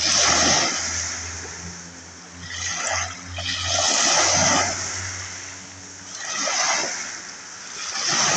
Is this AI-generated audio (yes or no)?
no